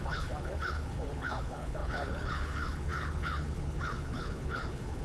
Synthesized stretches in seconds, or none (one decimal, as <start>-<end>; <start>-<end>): 0.0-5.0